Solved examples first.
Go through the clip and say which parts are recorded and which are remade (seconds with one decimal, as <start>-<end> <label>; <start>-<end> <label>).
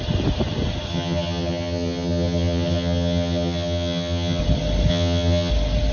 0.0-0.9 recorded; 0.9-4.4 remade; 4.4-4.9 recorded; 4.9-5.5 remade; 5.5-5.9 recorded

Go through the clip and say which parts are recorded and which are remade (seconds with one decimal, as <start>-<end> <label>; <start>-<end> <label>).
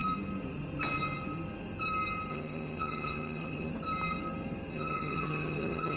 0.0-2.3 recorded; 2.3-3.7 remade; 3.7-4.7 recorded; 4.7-6.0 remade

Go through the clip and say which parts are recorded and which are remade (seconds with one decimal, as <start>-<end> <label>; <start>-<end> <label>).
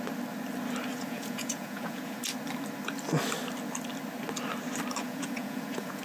0.0-0.9 recorded; 0.9-2.2 remade; 2.2-5.0 recorded; 5.0-6.0 remade